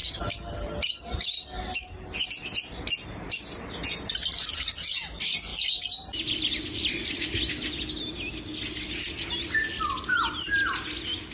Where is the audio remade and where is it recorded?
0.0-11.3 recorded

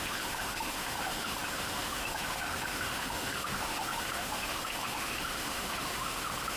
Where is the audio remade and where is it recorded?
0.0-6.6 remade

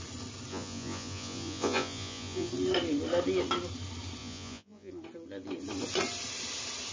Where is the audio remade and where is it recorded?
0.0-0.5 recorded; 0.5-2.5 remade; 2.5-4.2 recorded; 4.2-4.9 remade; 4.9-6.9 recorded

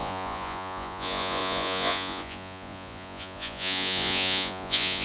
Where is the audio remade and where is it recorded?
0.0-5.0 remade